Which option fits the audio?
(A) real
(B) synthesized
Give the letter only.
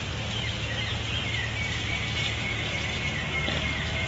A